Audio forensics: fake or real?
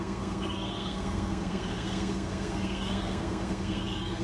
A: fake